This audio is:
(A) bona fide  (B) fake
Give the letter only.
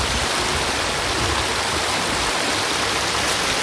A